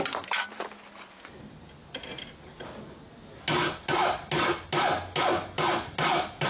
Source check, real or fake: real